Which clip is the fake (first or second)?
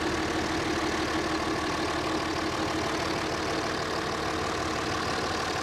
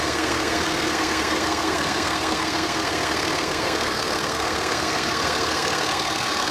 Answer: second